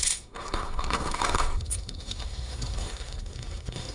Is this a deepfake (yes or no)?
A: yes